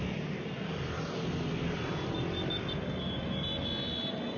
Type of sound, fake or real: real